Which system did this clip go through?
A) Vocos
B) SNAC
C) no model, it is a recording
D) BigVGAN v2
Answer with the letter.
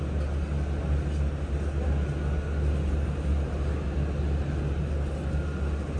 C